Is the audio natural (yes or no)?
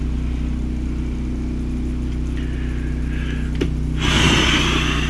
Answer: yes